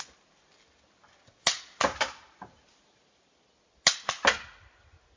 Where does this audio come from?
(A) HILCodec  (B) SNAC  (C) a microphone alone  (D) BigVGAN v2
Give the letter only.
C